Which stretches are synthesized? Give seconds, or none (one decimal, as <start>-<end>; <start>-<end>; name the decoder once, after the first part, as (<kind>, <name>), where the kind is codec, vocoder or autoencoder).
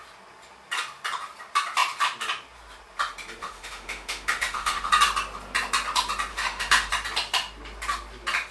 3.4-4.9 (autoencoder, DAC-VAE); 6.3-6.9